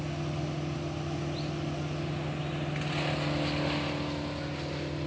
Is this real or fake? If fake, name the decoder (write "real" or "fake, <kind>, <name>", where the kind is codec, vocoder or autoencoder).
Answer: real